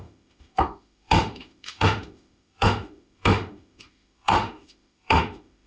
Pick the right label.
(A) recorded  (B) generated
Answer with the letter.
B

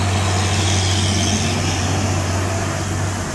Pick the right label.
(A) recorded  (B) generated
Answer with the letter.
A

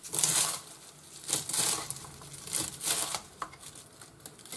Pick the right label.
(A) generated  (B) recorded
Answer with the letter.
B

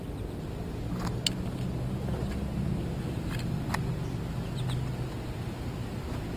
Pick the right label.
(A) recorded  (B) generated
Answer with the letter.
A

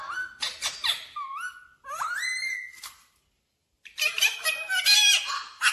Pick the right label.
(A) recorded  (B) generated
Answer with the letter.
A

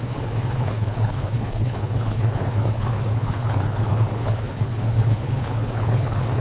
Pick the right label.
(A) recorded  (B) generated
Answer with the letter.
B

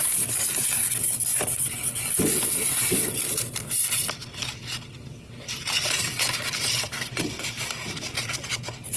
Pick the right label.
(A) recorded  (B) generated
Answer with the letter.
A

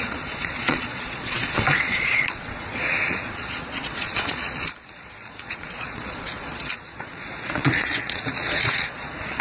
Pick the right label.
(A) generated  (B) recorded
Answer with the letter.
A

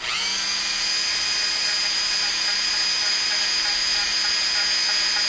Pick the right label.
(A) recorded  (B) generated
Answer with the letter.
A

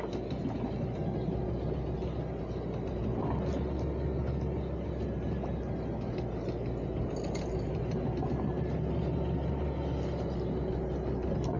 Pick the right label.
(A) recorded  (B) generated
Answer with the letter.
A